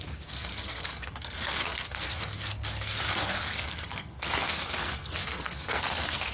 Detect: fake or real fake